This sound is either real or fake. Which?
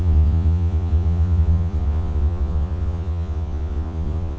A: fake